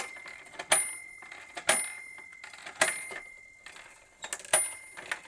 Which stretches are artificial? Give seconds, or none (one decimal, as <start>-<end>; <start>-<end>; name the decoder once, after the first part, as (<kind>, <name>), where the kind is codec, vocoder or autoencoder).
none

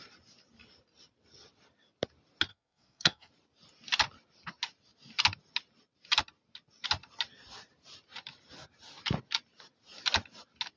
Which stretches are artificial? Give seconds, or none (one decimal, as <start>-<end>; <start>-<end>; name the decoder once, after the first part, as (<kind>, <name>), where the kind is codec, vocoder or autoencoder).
2.5-3.3 (codec, SNAC)